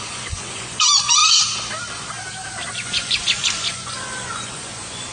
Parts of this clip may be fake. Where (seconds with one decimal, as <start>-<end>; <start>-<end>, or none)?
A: 0.0-1.2; 2.7-5.1